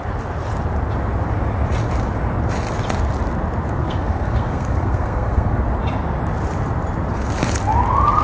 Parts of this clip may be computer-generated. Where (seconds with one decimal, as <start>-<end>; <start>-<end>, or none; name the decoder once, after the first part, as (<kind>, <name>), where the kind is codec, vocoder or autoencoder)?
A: 3.8-5.6 (codec, SNAC)